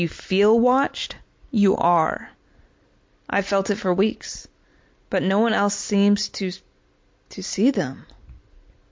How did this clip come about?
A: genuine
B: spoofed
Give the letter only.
A